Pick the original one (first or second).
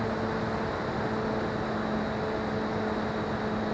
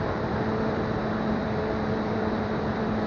first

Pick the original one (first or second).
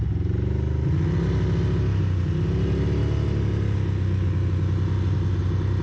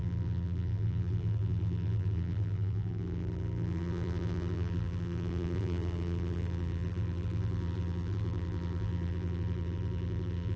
first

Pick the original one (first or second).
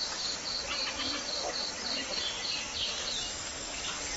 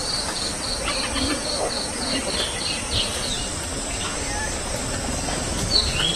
first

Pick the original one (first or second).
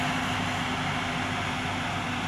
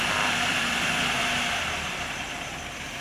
first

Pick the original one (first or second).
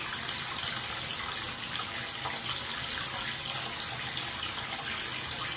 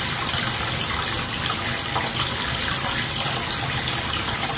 first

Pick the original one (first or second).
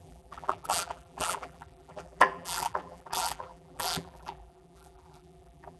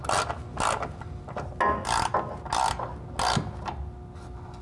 second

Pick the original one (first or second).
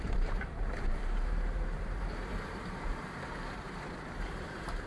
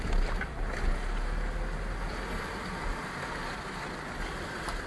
second